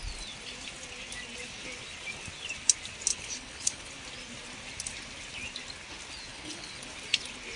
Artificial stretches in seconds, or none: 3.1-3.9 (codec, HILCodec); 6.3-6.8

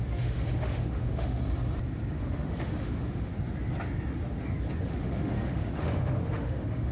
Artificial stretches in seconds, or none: 0.0-1.4 (autoencoder, DAC-VAE); 2.2-3.3; 4.8-6.9

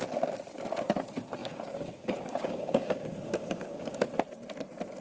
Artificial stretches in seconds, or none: 1.4-4.0 (codec, DAC)